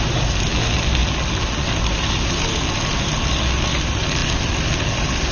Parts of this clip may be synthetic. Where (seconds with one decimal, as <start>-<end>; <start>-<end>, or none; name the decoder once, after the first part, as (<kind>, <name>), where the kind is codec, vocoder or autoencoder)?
none